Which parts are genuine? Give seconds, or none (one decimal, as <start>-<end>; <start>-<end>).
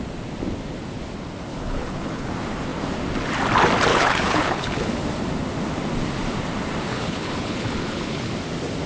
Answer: 0.0-1.5; 2.3-3.9; 4.9-6.9; 8.3-8.9